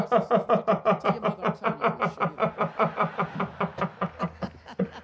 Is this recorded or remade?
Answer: recorded